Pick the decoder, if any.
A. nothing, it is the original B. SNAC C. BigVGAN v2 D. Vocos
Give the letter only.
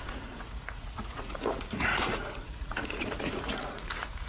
D